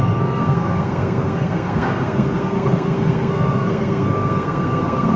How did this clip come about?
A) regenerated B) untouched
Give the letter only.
A